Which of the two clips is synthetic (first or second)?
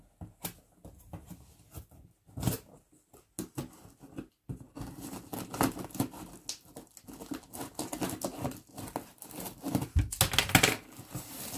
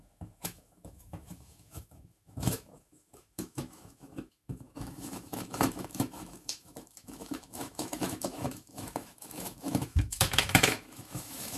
second